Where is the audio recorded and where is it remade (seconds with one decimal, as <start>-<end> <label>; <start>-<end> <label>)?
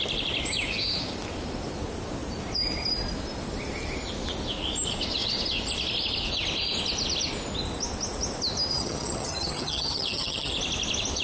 0.0-8.7 recorded; 8.7-10.5 remade; 10.5-11.2 recorded